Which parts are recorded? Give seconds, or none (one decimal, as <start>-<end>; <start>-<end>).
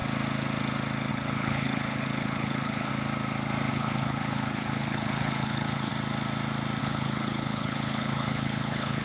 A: 0.0-1.1; 2.9-3.7; 5.9-6.8